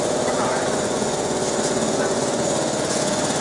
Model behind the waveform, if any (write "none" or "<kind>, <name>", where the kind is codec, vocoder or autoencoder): vocoder, Vocos